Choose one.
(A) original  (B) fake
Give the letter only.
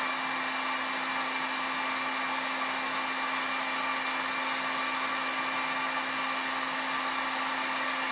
A